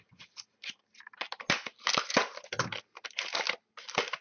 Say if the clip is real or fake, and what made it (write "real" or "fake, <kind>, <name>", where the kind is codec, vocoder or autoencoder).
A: real